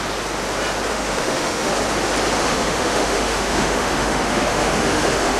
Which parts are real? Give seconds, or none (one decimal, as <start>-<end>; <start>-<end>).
0.0-0.9; 1.7-2.4